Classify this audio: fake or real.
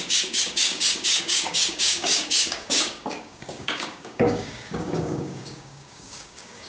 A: fake